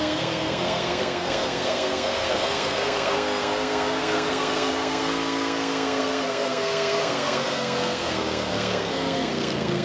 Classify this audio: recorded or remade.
remade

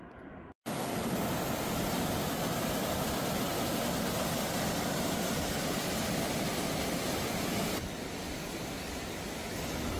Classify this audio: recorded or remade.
recorded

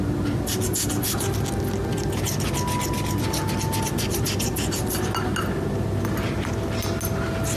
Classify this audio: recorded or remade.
recorded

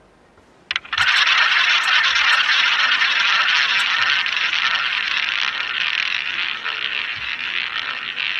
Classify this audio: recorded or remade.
recorded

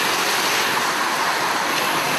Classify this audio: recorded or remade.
recorded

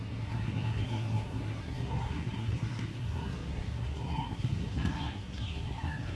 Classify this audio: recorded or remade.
remade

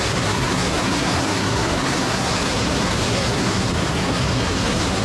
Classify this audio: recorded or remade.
remade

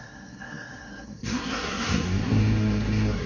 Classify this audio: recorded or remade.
remade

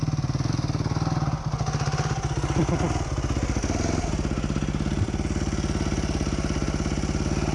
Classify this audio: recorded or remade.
recorded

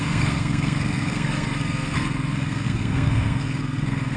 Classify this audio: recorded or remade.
remade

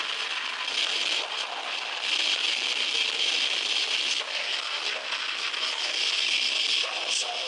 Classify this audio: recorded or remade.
recorded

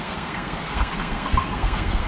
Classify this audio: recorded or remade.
remade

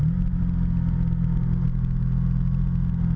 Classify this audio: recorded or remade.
recorded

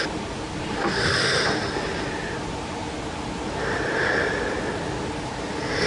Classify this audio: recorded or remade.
recorded